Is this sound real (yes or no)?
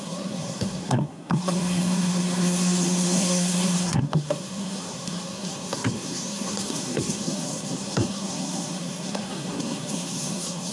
no